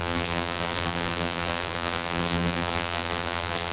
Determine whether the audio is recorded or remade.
remade